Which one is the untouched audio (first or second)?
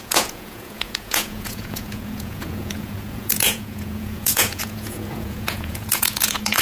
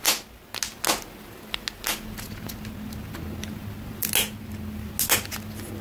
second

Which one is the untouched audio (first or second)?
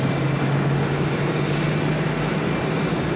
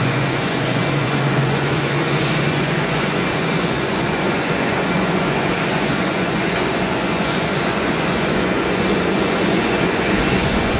first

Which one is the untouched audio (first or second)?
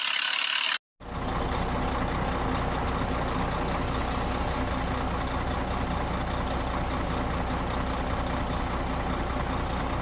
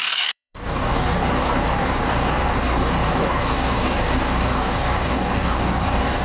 first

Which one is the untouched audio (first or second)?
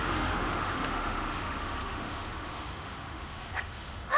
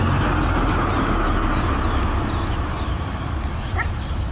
second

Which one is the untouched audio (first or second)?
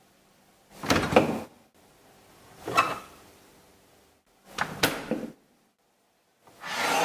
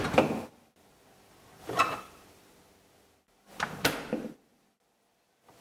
first